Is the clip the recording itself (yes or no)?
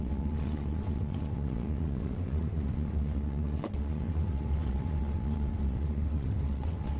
no